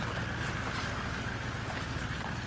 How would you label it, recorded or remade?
recorded